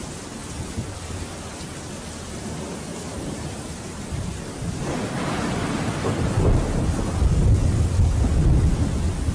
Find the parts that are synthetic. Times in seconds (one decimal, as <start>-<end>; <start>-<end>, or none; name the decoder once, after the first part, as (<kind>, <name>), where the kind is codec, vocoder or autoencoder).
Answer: 0.4-1.1 (vocoder, BigVGAN v2); 2.9-4.8